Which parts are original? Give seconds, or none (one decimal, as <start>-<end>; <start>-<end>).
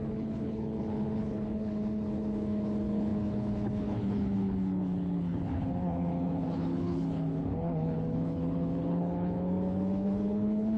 none